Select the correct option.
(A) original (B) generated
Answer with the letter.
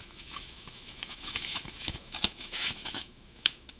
B